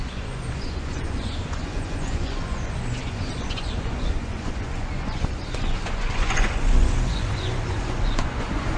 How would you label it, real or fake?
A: fake